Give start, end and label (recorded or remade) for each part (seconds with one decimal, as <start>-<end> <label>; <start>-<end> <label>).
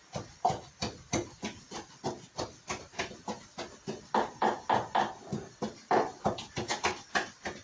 0.0-7.6 recorded